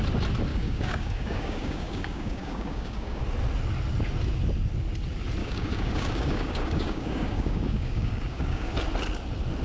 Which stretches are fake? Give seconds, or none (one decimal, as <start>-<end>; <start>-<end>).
0.5-3.2; 5.4-8.7